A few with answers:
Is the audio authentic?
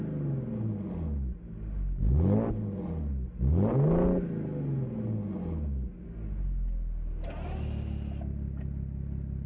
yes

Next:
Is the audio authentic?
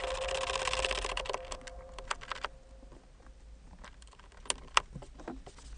yes